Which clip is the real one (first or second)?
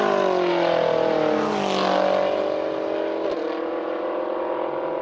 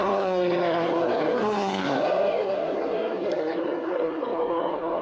first